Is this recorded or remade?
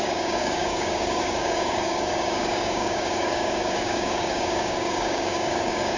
remade